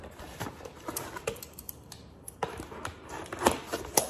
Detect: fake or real real